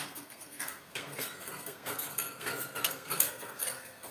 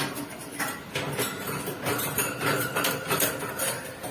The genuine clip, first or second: second